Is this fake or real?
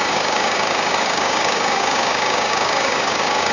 fake